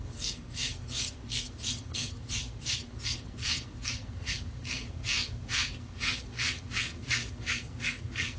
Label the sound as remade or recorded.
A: remade